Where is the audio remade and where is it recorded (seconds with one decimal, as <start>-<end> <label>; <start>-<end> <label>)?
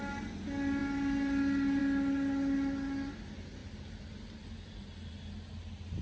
0.0-6.0 recorded